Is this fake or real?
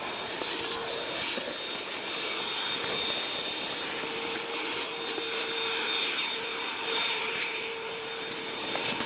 real